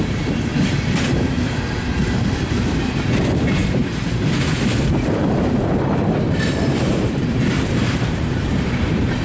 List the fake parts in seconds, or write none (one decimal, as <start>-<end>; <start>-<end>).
0.0-0.5; 1.2-9.2